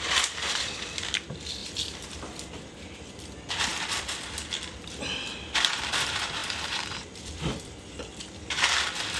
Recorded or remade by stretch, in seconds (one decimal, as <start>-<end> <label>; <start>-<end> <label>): 0.0-1.6 remade; 1.6-2.2 recorded; 2.2-3.7 remade; 3.7-4.7 recorded; 4.7-9.2 remade